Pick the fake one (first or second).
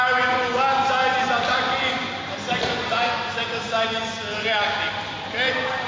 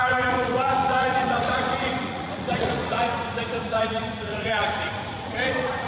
second